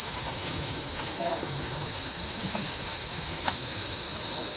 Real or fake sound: fake